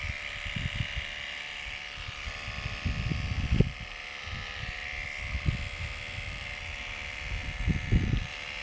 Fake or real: fake